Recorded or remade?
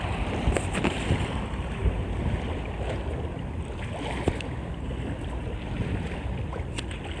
recorded